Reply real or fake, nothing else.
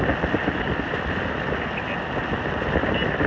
real